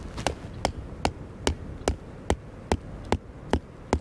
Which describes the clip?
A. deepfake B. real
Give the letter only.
B